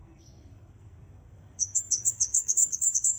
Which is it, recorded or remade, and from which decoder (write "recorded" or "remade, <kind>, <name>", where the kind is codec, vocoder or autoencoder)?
remade, codec, SNAC